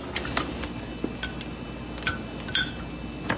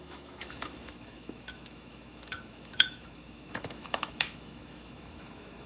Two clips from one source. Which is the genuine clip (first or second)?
first